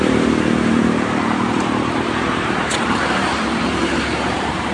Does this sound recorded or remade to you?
remade